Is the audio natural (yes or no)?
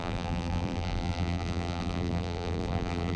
no